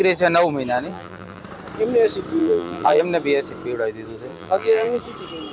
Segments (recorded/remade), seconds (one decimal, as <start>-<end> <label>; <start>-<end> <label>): 0.0-0.9 recorded; 0.9-1.4 remade; 1.4-2.4 recorded; 2.4-3.0 remade; 3.0-4.3 recorded; 4.3-5.0 remade; 5.0-5.5 recorded